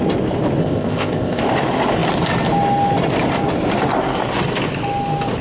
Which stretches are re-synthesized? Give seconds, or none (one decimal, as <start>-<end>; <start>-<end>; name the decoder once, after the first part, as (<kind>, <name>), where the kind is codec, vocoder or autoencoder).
0.6-1.4 (codec, ZipCodec)